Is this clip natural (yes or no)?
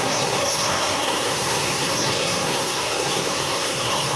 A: no